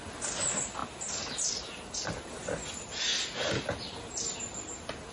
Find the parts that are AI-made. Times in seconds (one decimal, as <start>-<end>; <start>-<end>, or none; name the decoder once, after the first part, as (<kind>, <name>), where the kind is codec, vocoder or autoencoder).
none